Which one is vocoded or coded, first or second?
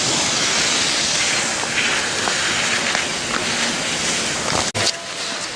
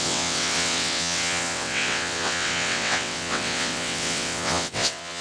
second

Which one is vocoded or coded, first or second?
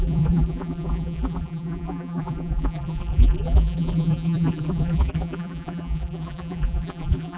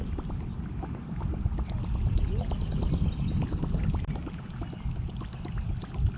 first